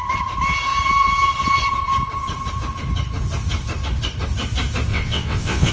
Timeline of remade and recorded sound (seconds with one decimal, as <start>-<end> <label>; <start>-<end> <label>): 0.0-4.9 recorded; 4.9-5.7 remade

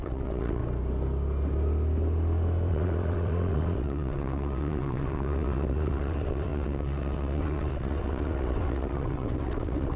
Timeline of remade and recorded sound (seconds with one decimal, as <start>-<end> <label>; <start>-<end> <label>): 0.0-0.6 remade; 0.6-2.7 recorded; 2.7-10.0 remade

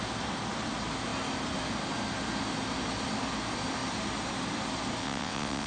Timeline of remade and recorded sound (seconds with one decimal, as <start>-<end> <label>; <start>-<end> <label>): 0.0-5.0 recorded; 5.0-5.7 remade

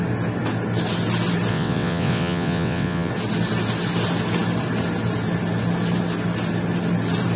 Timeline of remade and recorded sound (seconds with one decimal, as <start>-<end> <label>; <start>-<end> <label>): 0.0-1.5 recorded; 1.5-3.1 remade; 3.1-7.4 recorded